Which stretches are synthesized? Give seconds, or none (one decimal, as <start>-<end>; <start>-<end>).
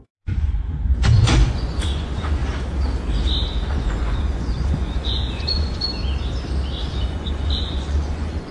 0.0-2.4; 3.7-6.0; 6.8-8.5